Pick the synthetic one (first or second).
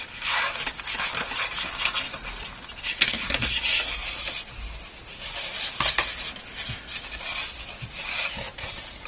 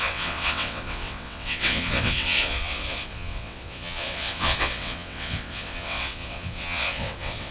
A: second